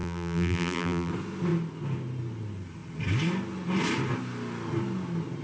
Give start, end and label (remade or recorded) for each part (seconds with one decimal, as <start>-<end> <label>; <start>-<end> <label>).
0.0-1.1 remade; 1.1-5.4 recorded